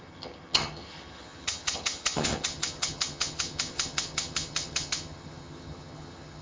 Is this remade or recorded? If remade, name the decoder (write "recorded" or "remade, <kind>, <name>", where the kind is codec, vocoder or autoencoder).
remade, vocoder, HiFi-GAN